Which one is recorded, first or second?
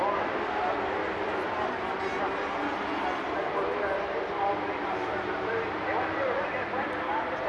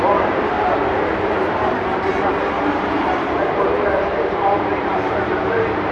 first